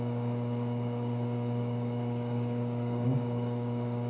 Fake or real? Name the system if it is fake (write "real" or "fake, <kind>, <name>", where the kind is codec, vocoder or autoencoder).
fake, codec, DAC